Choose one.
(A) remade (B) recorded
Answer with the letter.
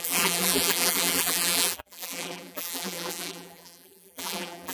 A